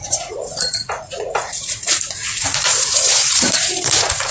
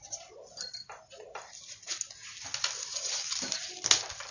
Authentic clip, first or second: second